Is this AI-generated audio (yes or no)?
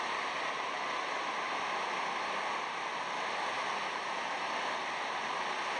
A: no